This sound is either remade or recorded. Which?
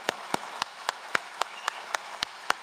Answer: remade